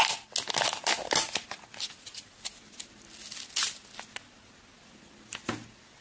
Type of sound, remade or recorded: recorded